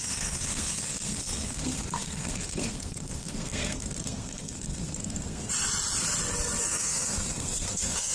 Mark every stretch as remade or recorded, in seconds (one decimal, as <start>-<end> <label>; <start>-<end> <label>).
0.0-5.4 remade; 5.4-6.6 recorded; 6.6-8.1 remade